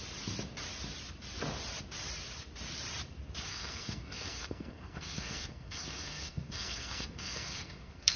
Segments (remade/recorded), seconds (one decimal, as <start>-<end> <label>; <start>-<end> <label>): 0.0-3.5 recorded; 3.5-8.2 remade